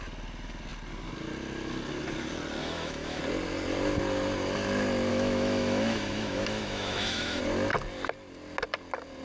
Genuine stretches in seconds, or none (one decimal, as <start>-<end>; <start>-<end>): 0.0-2.6; 3.2-5.1; 7.4-9.2